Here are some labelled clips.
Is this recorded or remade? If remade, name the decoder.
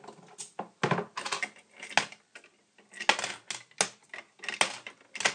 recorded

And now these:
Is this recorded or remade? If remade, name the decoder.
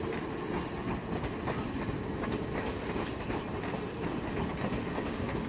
recorded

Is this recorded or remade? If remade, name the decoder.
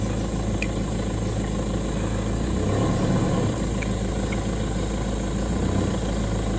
recorded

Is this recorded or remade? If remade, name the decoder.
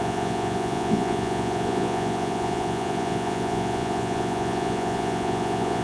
remade, vocoder, Vocos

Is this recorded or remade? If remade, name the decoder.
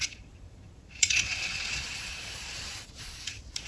remade, vocoder, Vocos